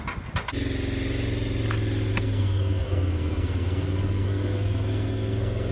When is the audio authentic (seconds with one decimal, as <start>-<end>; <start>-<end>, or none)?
0.0-2.1

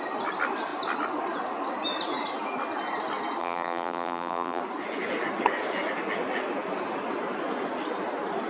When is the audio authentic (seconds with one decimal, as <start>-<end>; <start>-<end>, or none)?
0.0-3.4; 4.6-8.5

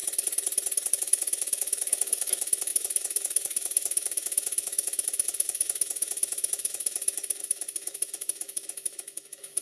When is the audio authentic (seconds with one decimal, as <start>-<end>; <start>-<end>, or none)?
0.0-0.9

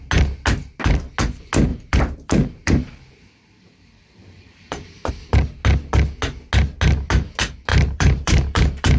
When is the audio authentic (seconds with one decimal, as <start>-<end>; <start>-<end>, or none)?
0.0-1.7; 5.1-7.7

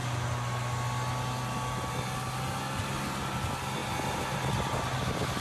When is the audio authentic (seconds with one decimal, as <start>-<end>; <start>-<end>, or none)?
0.0-5.4

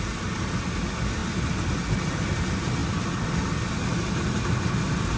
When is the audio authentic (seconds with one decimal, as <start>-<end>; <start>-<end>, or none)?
0.0-5.2